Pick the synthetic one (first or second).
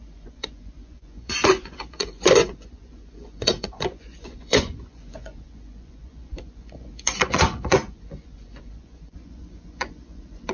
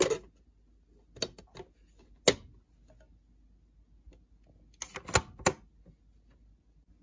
first